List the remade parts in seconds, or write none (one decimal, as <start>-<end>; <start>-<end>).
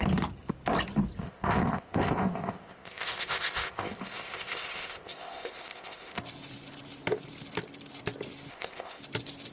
1.2-6.2; 8.5-9.0